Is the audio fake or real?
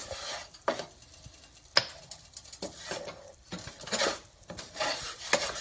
real